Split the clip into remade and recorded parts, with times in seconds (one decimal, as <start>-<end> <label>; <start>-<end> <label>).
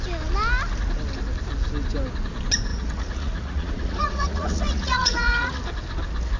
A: 0.0-2.7 recorded; 2.7-5.6 remade; 5.6-6.4 recorded